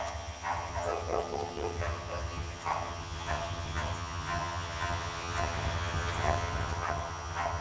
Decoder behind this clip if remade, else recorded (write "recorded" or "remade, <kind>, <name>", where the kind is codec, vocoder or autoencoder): remade, vocoder, HiFi-GAN